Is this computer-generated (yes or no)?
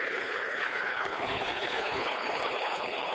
yes